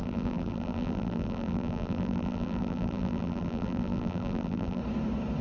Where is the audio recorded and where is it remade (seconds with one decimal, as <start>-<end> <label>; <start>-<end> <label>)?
0.0-4.8 remade; 4.8-5.4 recorded